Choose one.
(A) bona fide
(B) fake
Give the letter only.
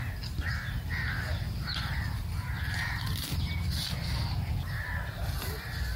A